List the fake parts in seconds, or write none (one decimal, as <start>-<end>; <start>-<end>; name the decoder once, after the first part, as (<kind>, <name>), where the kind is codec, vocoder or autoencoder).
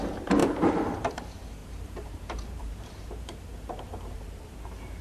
0.0-5.0 (vocoder, BigVGAN v2)